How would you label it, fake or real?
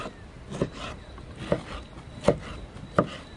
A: real